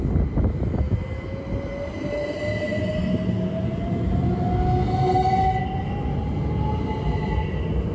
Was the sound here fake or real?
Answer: real